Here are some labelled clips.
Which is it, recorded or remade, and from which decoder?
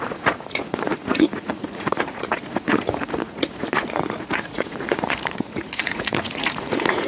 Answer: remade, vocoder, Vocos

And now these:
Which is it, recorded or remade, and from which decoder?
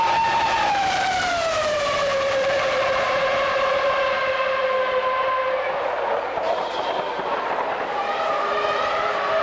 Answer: remade, vocoder, BigVGAN v2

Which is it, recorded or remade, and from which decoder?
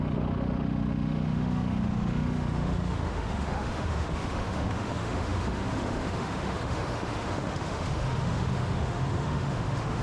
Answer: remade, autoencoder, DAC-VAE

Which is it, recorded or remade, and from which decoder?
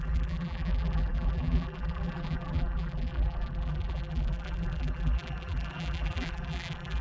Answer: remade, vocoder, BigVGAN v2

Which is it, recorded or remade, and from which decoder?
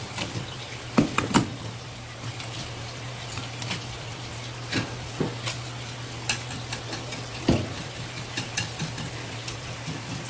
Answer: recorded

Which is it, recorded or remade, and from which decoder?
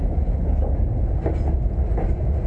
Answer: recorded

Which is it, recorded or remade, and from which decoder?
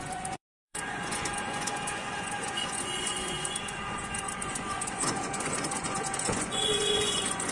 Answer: remade, vocoder, Vocos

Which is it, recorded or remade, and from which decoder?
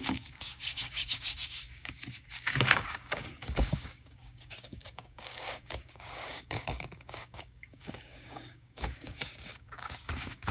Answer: remade, codec, DAC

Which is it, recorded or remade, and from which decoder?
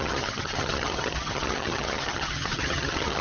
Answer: remade, vocoder, HiFi-GAN